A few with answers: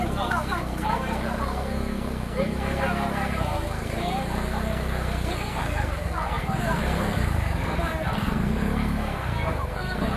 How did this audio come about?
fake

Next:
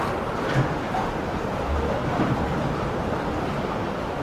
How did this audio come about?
real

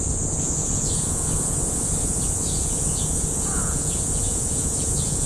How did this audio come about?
fake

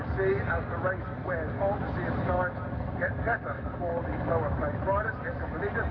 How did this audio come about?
real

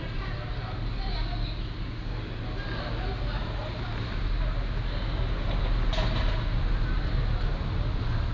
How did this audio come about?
real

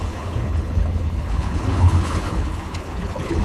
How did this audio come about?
fake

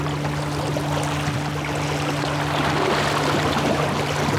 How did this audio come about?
real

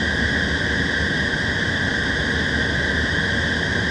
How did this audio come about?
real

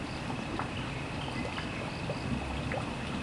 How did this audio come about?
real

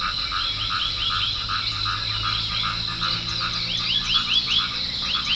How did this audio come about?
real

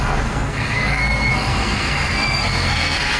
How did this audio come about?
fake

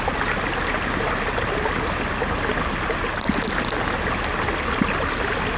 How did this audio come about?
real